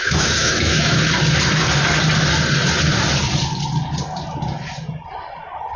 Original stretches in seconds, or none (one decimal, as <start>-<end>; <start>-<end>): 1.0-5.8